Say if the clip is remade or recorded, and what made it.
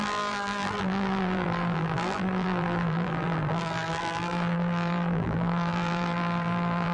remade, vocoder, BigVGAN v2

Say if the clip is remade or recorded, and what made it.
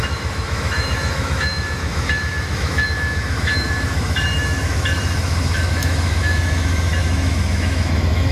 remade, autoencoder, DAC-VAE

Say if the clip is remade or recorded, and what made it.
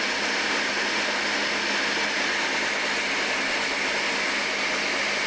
recorded